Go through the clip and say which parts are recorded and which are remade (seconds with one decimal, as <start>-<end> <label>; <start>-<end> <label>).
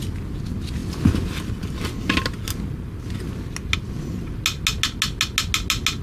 0.0-6.0 recorded